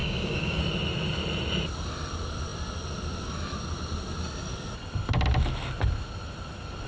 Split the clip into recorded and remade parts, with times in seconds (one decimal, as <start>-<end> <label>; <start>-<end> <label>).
0.0-0.6 remade; 0.6-6.9 recorded